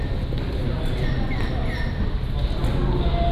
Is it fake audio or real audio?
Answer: real